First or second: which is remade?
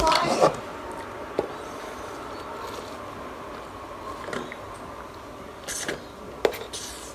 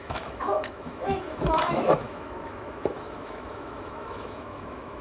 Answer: second